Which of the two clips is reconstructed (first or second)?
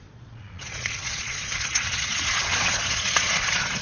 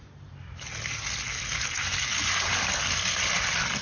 first